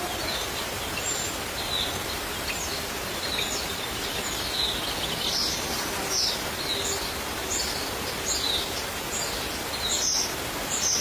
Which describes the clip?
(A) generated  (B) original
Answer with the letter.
B